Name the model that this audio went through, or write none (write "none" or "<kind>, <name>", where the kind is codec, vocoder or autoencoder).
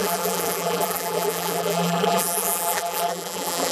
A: vocoder, BigVGAN v2